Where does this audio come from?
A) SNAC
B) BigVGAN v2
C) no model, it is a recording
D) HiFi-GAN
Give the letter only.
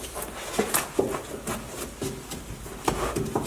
C